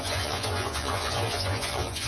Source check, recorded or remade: remade